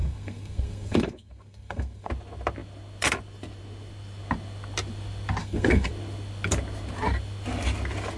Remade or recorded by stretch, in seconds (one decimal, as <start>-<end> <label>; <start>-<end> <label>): 0.0-2.1 remade; 2.1-5.4 recorded; 5.4-5.9 remade; 5.9-8.2 recorded